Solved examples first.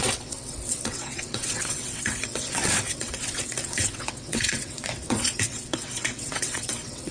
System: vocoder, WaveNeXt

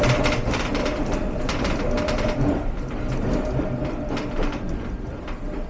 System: none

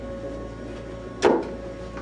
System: none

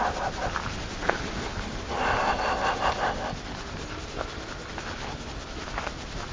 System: none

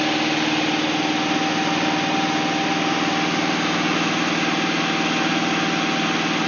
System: none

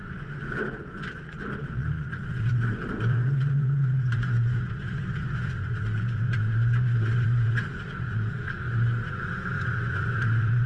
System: vocoder, Vocos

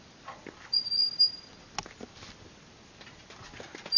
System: none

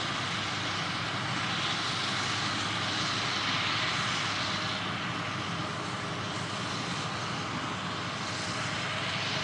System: none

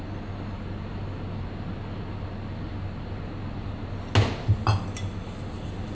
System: none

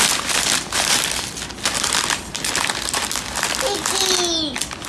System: none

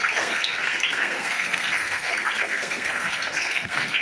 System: codec, SNAC